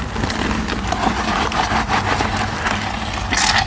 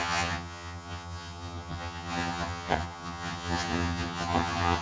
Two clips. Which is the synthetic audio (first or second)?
second